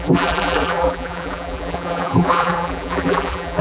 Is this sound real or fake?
fake